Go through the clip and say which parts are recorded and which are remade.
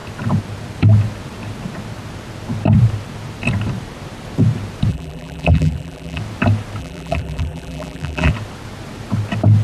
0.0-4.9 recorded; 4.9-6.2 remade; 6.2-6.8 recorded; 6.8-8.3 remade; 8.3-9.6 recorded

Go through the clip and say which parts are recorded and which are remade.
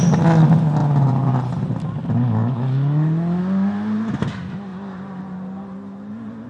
0.0-6.5 recorded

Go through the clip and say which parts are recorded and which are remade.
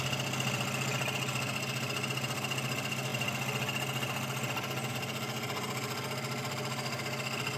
0.0-7.6 recorded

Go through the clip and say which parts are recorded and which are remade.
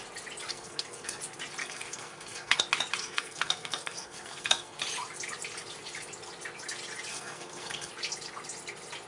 0.0-0.5 recorded; 0.5-1.2 remade; 1.2-1.6 recorded; 1.6-2.6 remade; 2.6-3.0 recorded; 3.0-4.8 remade; 4.8-7.1 recorded; 7.1-7.9 remade; 7.9-9.1 recorded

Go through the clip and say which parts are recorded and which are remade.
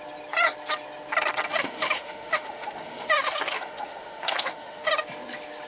0.0-1.5 recorded; 1.5-4.9 remade; 4.9-5.7 recorded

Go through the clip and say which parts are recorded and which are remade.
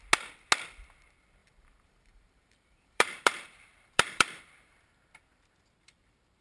0.0-1.4 recorded; 1.4-4.8 remade; 4.8-6.4 recorded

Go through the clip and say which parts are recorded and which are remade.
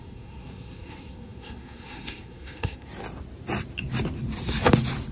0.0-2.9 remade; 2.9-5.1 recorded